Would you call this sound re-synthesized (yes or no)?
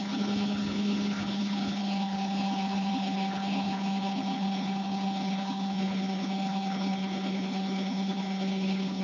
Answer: yes